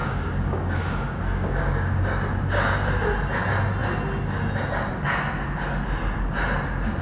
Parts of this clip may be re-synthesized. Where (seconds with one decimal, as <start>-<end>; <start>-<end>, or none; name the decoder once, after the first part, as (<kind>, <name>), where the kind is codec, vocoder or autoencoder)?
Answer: 0.0-2.2 (codec, DAC)